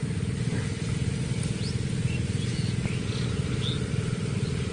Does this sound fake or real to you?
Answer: real